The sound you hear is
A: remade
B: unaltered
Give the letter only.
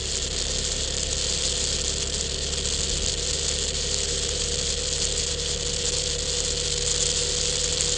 B